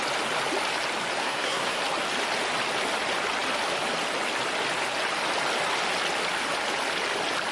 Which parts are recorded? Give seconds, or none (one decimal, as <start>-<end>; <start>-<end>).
0.0-1.2; 1.8-7.5